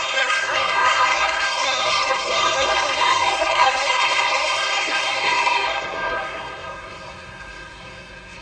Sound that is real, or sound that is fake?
fake